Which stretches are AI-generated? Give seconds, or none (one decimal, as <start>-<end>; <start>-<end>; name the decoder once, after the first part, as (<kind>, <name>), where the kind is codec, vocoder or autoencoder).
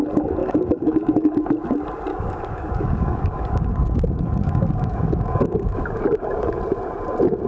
0.4-1.5 (codec, DAC); 2.1-6.6